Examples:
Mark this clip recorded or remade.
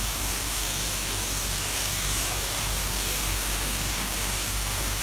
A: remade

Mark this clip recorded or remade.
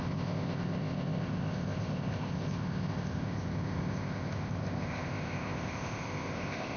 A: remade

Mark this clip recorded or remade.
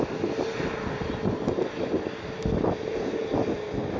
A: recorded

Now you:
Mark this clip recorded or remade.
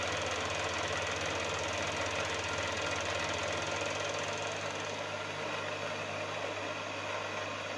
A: recorded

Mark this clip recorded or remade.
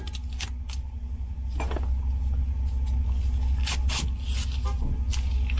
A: recorded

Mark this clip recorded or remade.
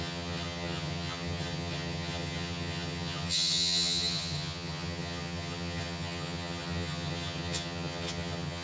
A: remade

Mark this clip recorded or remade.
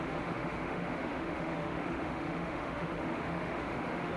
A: remade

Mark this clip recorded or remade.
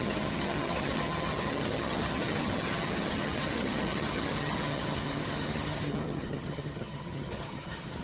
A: remade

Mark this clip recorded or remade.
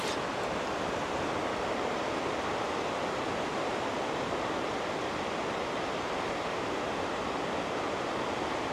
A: recorded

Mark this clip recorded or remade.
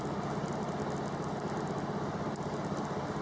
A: recorded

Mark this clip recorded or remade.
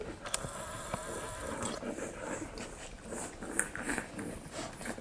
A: recorded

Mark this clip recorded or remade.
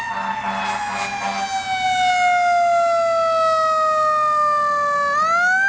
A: recorded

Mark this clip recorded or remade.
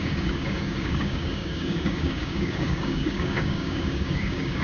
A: remade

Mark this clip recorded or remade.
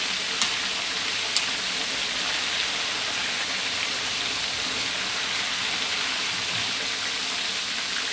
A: recorded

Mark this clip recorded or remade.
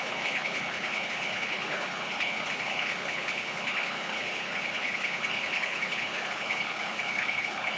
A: remade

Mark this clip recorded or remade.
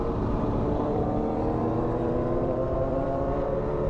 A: remade